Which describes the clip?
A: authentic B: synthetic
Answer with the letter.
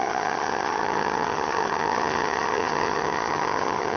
B